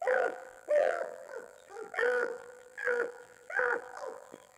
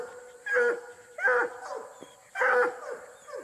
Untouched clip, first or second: second